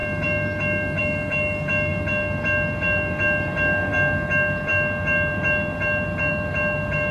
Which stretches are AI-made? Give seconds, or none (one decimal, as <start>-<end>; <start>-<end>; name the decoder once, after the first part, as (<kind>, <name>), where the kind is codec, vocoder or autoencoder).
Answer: none